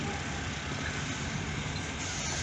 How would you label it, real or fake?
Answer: real